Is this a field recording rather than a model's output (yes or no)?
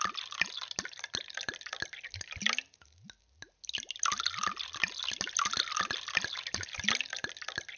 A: yes